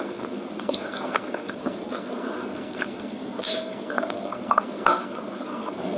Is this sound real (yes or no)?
no